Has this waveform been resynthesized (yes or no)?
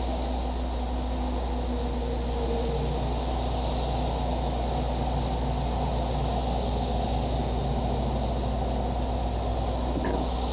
no